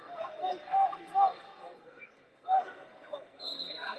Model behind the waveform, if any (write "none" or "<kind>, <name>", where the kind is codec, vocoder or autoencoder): codec, SNAC